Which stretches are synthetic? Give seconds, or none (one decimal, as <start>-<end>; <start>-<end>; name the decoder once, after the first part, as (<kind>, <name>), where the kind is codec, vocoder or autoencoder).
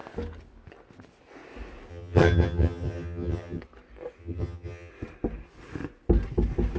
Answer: 1.9-3.6 (vocoder, HiFi-GAN); 4.2-4.9